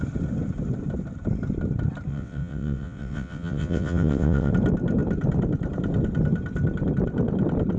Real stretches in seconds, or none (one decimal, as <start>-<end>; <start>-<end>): 0.0-2.1; 4.5-7.8